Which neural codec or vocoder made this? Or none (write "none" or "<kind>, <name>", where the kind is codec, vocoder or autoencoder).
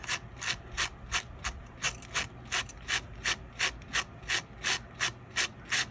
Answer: none